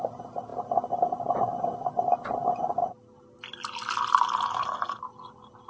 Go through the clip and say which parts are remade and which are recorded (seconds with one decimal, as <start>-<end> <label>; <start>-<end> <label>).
0.0-5.7 recorded